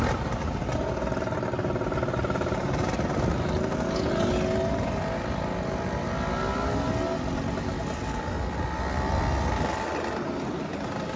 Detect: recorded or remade recorded